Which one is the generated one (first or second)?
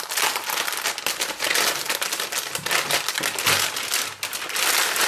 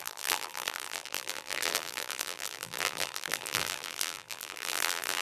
second